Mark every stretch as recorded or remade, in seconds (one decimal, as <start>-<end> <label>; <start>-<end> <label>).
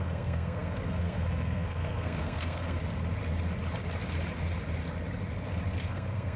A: 0.0-2.8 remade; 2.8-5.8 recorded; 5.8-6.4 remade